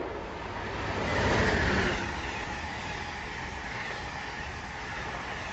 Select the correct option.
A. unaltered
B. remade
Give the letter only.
A